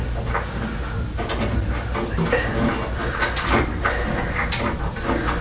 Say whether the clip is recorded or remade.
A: recorded